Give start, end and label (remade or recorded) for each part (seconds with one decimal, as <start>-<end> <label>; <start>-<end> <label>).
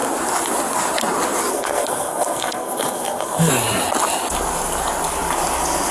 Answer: 0.0-1.5 recorded; 1.5-3.5 remade; 3.5-5.9 recorded